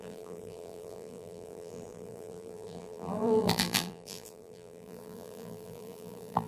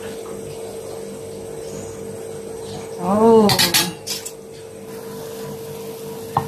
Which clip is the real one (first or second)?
second